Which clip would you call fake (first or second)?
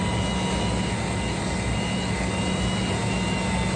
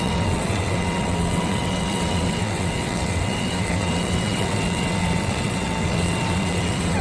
second